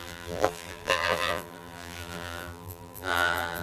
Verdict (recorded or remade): remade